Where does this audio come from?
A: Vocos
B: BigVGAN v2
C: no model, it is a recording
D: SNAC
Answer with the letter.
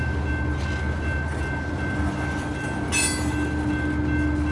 C